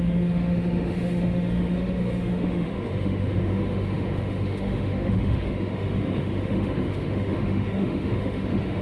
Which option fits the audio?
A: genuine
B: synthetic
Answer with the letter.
B